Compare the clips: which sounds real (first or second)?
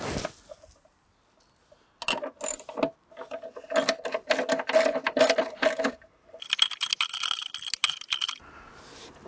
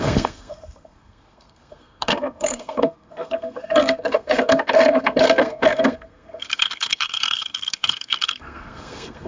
first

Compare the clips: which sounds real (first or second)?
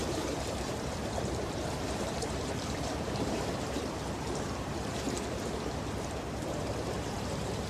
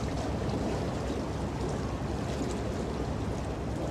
second